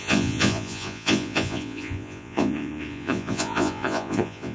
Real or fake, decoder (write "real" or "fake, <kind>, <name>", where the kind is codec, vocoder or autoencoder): fake, vocoder, Vocos